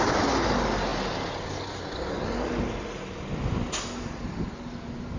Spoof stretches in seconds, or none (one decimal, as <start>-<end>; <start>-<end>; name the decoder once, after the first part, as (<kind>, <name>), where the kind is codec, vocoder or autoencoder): none